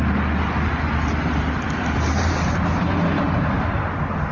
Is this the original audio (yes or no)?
yes